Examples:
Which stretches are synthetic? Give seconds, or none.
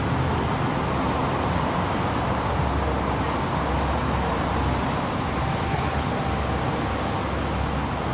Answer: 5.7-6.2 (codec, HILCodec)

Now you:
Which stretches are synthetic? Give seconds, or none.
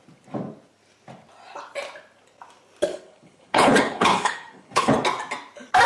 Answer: 2.9-4.9 (codec, HILCodec)